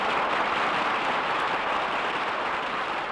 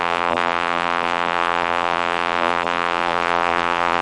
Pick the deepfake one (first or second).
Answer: second